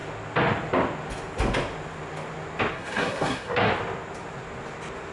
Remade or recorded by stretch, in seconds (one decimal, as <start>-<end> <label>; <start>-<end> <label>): 0.0-2.7 recorded; 2.7-3.7 remade; 3.7-5.1 recorded